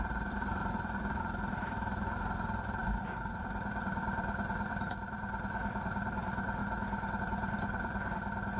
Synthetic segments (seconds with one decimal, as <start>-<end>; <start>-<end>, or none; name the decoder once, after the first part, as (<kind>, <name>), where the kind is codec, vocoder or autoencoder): 0.0-6.6 (vocoder, BigVGAN v2); 7.2-8.6